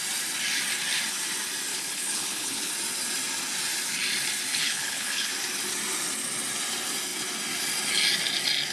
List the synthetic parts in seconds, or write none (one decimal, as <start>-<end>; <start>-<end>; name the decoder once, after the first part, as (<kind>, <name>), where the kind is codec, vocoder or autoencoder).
1.7-2.7 (codec, HILCodec); 4.5-5.3